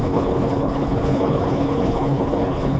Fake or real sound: fake